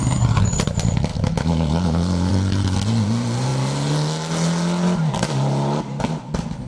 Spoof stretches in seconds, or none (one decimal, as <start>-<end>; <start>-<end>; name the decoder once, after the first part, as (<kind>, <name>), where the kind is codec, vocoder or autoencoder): 1.1-2.3 (autoencoder, DAC-VAE)